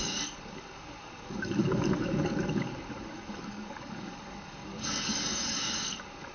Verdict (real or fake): fake